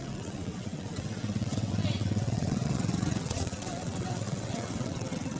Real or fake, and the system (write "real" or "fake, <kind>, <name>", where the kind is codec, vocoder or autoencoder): fake, vocoder, WaveNeXt